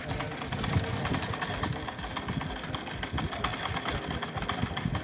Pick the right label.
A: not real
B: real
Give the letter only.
B